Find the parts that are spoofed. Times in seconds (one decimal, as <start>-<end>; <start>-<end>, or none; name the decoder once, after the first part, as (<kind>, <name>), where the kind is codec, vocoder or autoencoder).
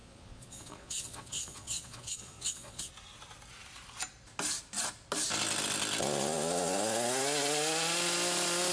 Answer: 0.0-2.9 (vocoder, Vocos)